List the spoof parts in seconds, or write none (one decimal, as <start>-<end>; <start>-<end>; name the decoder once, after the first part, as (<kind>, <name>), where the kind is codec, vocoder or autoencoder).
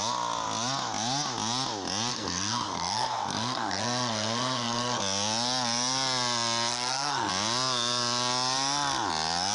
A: 2.1-5.0 (codec, SNAC); 6.7-7.3